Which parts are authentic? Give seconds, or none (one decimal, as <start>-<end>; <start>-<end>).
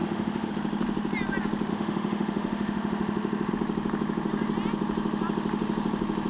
0.5-1.7; 3.5-6.3